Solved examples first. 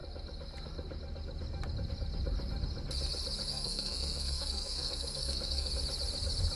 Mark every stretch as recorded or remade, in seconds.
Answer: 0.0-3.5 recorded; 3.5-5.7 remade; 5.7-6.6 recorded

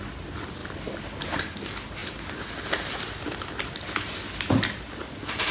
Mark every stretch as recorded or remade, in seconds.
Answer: 0.0-5.5 recorded